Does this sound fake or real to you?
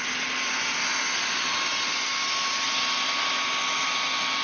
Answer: real